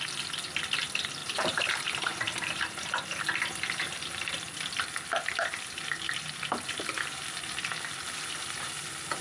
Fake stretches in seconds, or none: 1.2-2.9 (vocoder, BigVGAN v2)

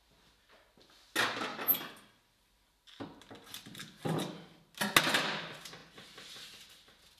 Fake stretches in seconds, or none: none

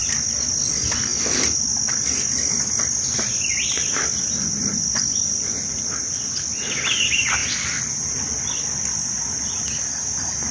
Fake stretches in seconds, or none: 1.1-5.8 (vocoder, BigVGAN v2)

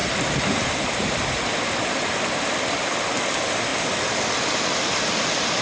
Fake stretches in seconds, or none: 0.0-2.1 (vocoder, BigVGAN v2)

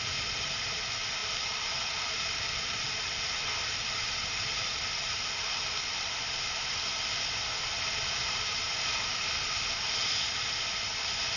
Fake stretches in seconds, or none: 1.2-4.7 (vocoder, BigVGAN v2)

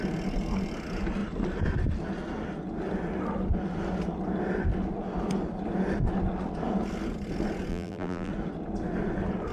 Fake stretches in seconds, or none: 7.7-8.3 (vocoder, BigVGAN v2)